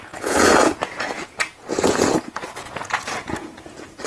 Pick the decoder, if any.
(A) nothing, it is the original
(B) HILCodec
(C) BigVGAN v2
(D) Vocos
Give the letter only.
D